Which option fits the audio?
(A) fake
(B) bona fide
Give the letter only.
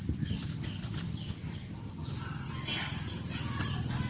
B